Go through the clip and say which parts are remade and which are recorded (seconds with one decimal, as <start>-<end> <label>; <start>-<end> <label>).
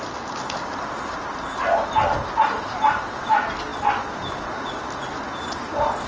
0.0-6.1 recorded